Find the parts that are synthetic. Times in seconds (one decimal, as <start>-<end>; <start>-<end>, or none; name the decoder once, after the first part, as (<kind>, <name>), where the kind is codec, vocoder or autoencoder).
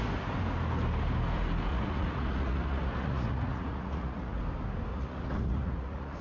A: 1.7-4.4 (vocoder, Vocos); 4.9-6.2